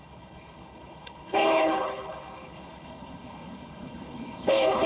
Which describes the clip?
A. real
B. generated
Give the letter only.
B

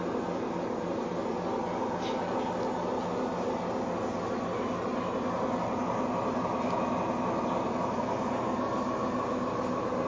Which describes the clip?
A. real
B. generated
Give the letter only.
A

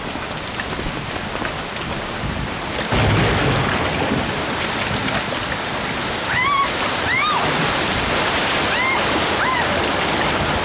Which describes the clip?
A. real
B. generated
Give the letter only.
A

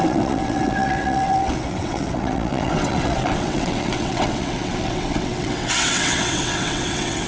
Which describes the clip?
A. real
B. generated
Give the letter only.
B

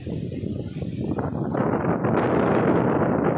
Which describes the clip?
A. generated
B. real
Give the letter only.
B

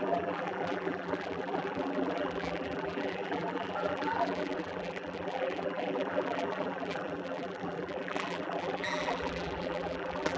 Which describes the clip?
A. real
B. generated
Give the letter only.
B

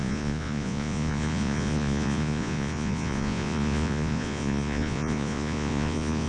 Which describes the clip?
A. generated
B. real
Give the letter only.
A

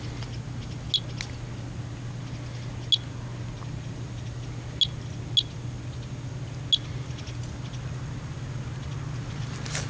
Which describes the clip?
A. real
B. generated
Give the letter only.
A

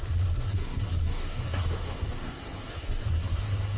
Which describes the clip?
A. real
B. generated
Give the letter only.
B